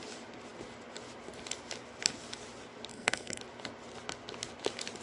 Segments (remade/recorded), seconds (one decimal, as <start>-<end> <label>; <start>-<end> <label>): 0.0-2.9 recorded; 2.9-3.4 remade; 3.4-5.0 recorded